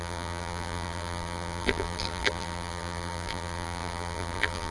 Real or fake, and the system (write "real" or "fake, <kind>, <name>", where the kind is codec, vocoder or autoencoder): fake, vocoder, BigVGAN v2